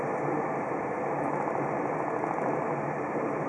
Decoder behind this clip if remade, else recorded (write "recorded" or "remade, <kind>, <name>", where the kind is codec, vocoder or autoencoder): recorded